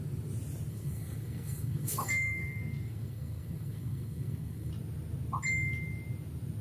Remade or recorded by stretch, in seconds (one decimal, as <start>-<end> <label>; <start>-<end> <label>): 0.0-0.7 recorded; 0.7-4.7 remade; 4.7-6.6 recorded